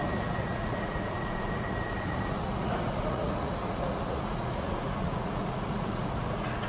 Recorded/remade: remade